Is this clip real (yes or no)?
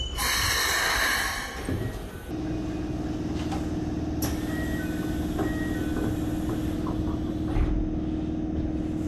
yes